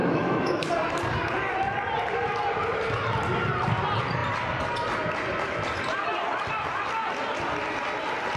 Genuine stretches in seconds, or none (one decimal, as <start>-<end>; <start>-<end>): 0.7-8.4